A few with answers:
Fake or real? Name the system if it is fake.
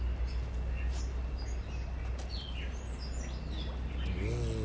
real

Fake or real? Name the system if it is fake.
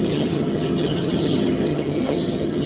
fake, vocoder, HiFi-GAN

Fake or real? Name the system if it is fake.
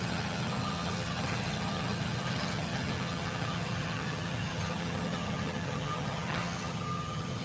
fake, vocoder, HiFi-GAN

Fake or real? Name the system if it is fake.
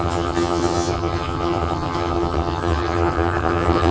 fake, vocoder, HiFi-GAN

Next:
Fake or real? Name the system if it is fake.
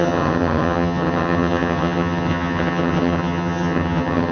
fake, vocoder, HiFi-GAN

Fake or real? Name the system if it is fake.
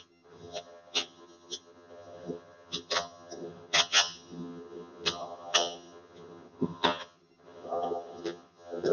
fake, vocoder, HiFi-GAN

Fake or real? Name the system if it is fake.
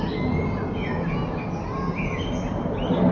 real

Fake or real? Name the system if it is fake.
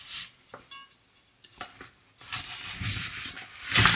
real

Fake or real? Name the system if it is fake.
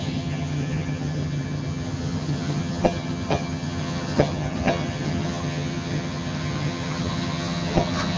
fake, vocoder, HiFi-GAN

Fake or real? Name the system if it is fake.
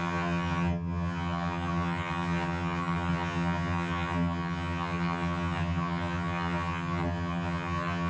fake, vocoder, HiFi-GAN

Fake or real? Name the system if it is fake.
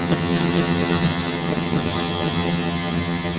fake, vocoder, HiFi-GAN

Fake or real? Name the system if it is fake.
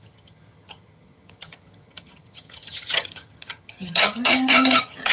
fake, vocoder, HiFi-GAN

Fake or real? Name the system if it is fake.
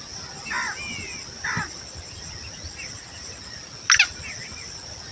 real